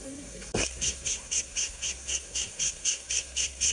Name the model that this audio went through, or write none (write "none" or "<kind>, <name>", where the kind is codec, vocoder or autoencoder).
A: codec, SNAC